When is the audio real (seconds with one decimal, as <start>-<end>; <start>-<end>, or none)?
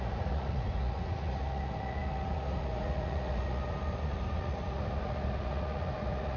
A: none